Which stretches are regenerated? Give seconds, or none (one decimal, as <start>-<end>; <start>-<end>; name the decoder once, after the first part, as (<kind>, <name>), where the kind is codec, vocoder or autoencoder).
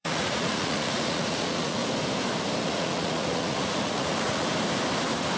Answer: 0.0-1.8 (vocoder, Vocos); 2.6-4.5